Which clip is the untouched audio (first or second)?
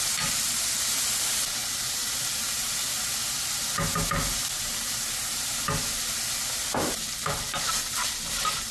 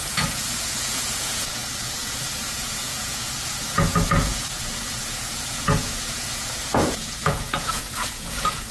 first